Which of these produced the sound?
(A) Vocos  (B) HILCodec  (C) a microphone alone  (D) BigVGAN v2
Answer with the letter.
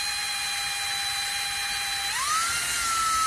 C